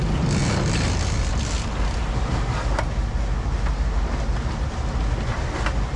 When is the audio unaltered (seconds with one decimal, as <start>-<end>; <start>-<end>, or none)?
0.0-6.0